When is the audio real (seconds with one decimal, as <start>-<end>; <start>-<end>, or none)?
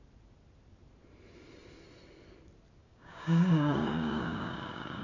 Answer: 0.0-2.8